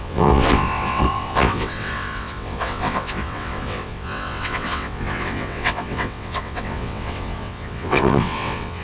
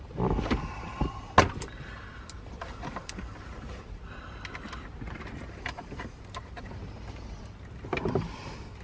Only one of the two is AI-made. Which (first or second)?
first